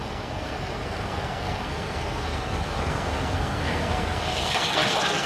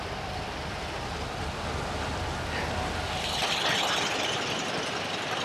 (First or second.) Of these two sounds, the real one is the second